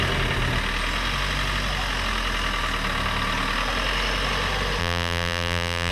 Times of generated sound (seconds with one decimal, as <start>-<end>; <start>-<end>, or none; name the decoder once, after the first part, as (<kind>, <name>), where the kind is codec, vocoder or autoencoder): 4.8-5.9 (vocoder, BigVGAN v2)

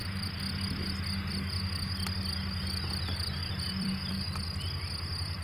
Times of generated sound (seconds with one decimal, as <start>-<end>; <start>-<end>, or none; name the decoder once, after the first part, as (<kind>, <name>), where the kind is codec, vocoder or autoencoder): 3.4-4.1 (vocoder, BigVGAN v2)

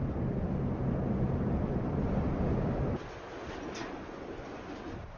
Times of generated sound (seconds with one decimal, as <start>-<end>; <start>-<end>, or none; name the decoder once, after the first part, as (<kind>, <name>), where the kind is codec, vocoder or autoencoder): none

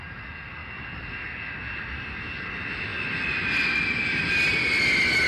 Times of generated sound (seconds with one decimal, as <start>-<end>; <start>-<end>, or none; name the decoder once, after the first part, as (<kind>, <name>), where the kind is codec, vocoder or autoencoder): none

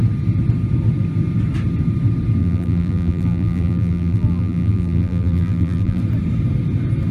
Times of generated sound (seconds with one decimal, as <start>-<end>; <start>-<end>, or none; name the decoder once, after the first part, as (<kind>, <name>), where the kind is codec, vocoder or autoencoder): 2.4-6.0 (vocoder, BigVGAN v2)

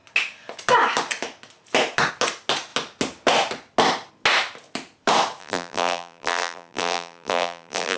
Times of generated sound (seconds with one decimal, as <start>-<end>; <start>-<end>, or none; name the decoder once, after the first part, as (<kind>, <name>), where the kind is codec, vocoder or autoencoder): 5.4-8.0 (vocoder, BigVGAN v2)